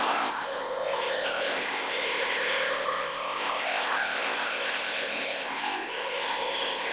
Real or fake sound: fake